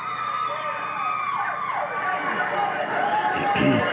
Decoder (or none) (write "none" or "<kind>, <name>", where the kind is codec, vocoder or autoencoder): none